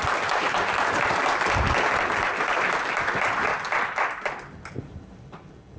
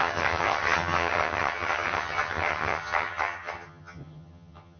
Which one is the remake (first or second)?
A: second